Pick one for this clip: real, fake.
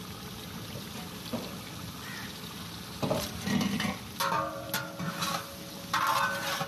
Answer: real